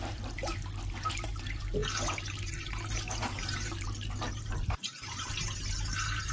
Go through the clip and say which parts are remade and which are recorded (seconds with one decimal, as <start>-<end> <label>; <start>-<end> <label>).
0.0-0.5 remade; 0.5-1.1 recorded; 1.1-1.8 remade; 1.8-2.4 recorded; 2.4-6.3 remade